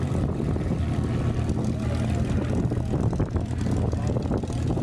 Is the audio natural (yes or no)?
yes